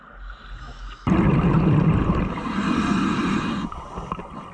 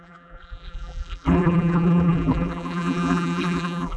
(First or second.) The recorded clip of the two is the first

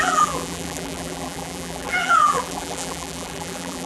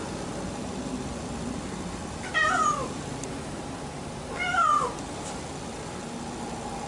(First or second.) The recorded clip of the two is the second